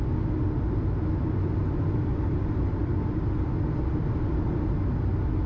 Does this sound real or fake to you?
real